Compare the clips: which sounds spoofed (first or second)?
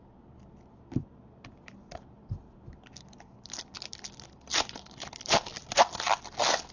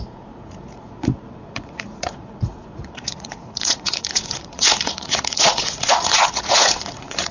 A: second